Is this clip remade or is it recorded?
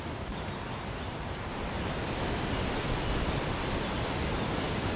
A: recorded